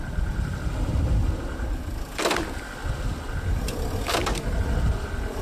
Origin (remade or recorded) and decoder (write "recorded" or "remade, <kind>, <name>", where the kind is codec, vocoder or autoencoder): recorded